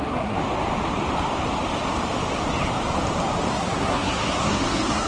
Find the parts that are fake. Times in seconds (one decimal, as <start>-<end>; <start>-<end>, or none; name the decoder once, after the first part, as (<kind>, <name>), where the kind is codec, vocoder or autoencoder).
0.0-0.4 (codec, SNAC); 3.5-5.1